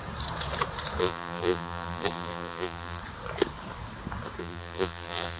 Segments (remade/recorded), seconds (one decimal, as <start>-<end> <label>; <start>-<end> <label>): 0.0-1.0 recorded; 1.0-3.0 remade; 3.0-4.4 recorded; 4.4-5.4 remade